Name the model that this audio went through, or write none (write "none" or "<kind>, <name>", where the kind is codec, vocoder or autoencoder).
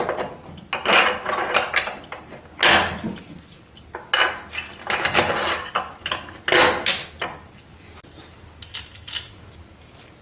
none